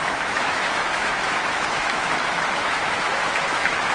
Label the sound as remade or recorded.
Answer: remade